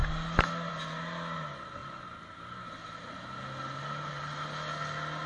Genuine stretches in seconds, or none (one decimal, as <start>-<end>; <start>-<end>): 0.0-5.3